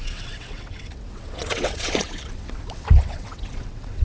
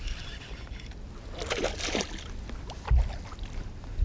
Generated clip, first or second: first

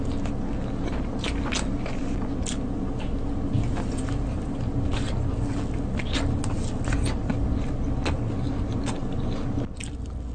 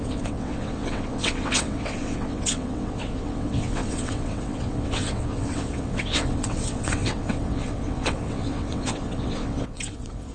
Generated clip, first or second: second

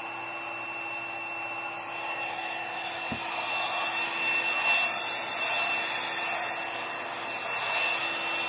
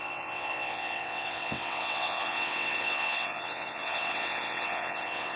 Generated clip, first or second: second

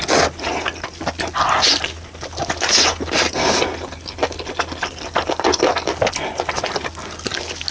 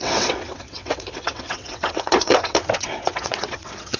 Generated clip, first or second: second